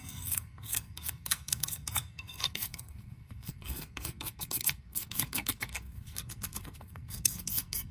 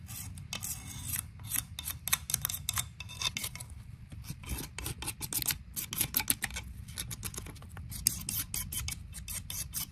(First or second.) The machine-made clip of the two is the first